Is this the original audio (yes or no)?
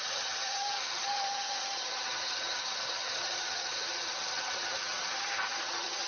no